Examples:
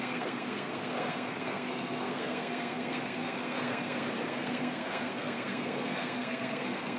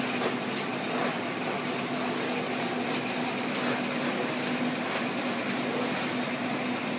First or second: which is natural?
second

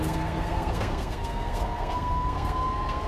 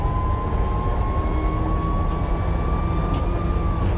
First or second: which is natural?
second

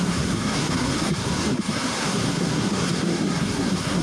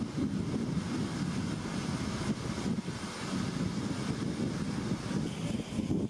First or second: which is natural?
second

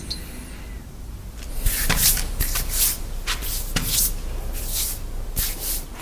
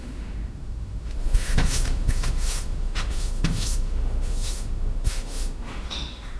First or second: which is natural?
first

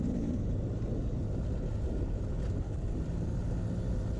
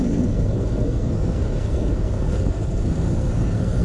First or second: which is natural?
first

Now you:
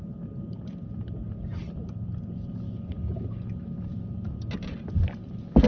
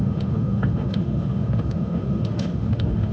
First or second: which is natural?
first